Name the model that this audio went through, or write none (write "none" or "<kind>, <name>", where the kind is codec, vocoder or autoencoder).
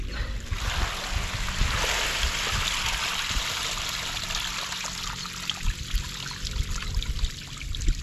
none